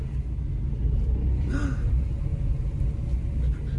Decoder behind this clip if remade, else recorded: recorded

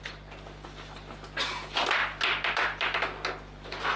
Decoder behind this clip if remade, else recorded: recorded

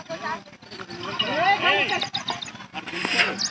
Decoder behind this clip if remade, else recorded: recorded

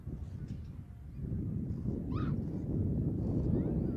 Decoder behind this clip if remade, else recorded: recorded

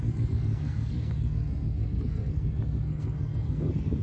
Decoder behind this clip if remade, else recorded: remade, codec, SNAC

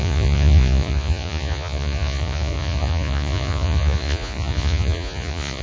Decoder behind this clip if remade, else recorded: remade, vocoder, Vocos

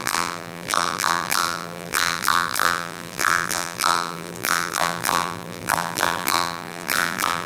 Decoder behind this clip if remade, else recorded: remade, vocoder, BigVGAN v2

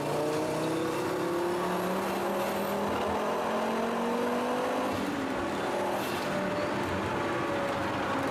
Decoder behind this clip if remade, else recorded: recorded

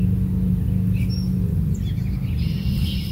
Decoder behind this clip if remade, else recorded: recorded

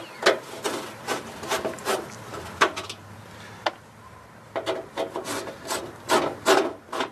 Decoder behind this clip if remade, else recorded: recorded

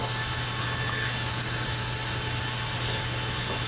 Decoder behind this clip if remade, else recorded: recorded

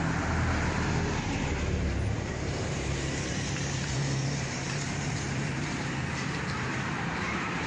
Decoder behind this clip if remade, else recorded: remade, vocoder, BigVGAN v2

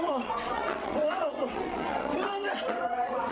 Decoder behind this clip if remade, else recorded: remade, vocoder, WaveNeXt